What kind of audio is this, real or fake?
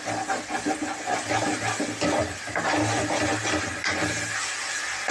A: real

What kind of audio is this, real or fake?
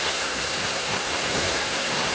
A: fake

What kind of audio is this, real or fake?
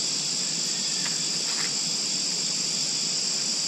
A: real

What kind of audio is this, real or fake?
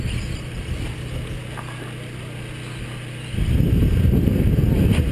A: real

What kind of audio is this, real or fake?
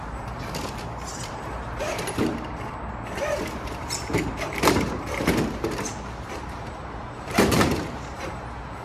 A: fake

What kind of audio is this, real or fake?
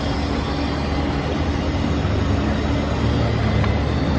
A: real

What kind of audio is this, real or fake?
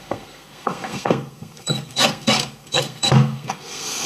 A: fake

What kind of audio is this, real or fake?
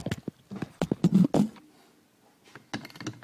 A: real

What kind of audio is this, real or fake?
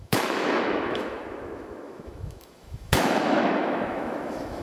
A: fake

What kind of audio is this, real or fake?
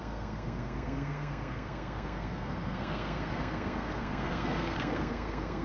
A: fake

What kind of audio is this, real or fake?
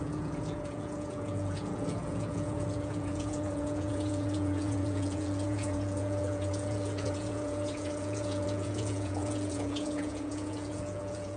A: fake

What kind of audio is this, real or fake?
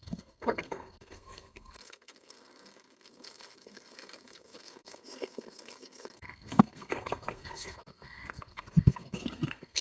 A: fake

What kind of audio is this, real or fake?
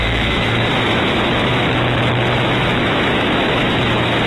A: fake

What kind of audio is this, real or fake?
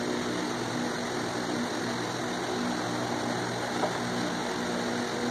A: real